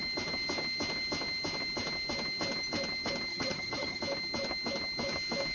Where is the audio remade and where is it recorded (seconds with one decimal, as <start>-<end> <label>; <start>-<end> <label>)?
0.0-3.3 recorded; 3.3-4.0 remade; 4.0-5.5 recorded